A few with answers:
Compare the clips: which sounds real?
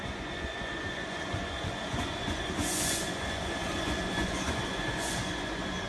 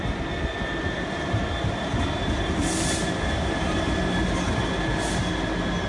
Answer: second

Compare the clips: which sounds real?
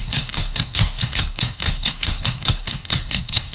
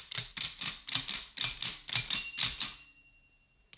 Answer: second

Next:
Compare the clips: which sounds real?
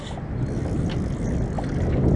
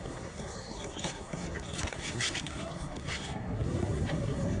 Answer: first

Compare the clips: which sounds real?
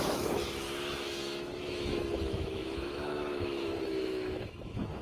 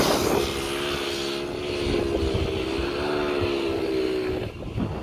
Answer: second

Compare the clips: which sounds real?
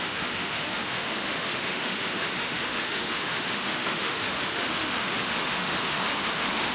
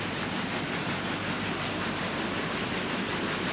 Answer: second